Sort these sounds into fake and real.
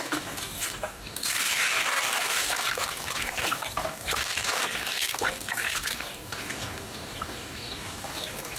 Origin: fake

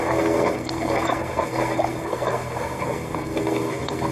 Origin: fake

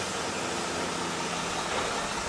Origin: real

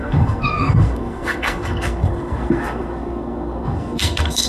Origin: fake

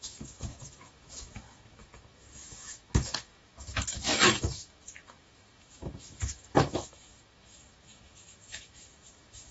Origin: fake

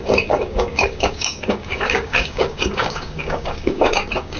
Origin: fake